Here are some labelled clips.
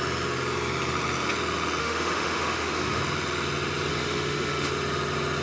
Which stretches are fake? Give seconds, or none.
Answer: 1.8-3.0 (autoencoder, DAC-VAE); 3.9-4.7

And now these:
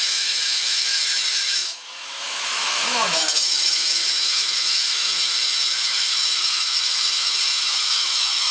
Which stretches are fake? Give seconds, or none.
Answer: 0.0-8.5 (autoencoder, DAC-VAE)

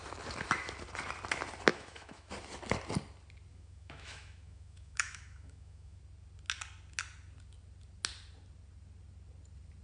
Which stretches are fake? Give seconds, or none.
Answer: 1.7-2.3 (autoencoder, DAC-VAE); 3.5-6.0

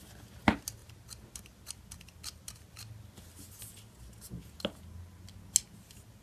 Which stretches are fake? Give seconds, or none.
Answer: none

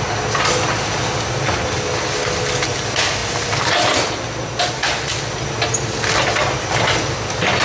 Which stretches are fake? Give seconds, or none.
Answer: none